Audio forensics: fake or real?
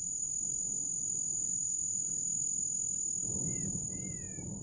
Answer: real